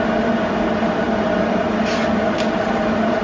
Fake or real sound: real